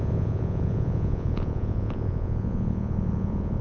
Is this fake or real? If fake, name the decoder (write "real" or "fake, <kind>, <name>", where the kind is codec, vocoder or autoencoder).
fake, vocoder, Vocos